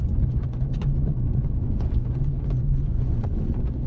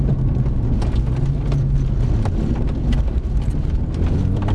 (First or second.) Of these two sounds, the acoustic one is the second